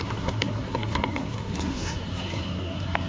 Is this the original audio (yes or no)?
no